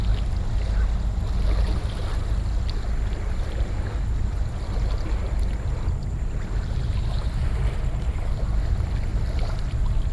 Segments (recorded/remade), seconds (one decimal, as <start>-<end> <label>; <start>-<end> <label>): 0.0-9.1 recorded; 9.1-9.6 remade; 9.6-10.1 recorded